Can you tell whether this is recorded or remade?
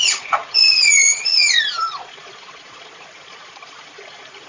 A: remade